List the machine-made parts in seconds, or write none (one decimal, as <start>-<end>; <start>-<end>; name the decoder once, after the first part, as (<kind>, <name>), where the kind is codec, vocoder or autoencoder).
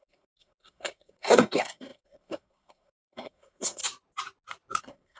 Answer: 0.0-3.8 (codec, SNAC); 4.8-5.2